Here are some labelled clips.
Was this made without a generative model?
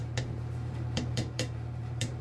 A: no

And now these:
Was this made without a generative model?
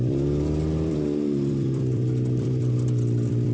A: no